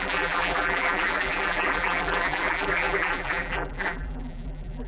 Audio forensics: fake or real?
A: fake